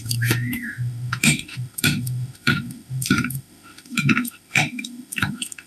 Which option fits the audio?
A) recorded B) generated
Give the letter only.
B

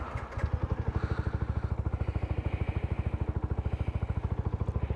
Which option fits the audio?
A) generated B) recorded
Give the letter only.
B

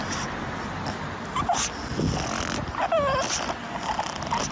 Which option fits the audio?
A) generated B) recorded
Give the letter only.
B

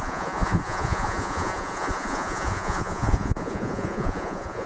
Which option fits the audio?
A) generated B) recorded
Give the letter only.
A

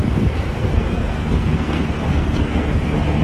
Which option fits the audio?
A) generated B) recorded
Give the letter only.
A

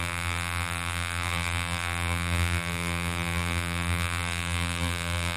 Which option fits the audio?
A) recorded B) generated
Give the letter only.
B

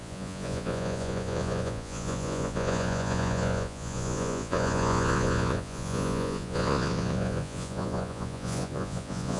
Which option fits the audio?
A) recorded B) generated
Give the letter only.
B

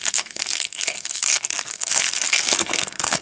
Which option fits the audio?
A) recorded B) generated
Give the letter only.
B